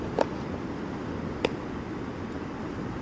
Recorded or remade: recorded